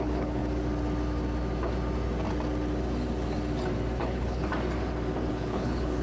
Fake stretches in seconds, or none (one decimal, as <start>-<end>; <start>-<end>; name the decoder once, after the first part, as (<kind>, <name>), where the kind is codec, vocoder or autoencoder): 0.0-0.4 (codec, HILCodec); 4.0-4.5; 5.3-6.0